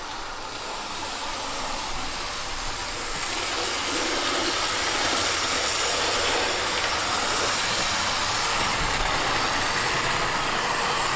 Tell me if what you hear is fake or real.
real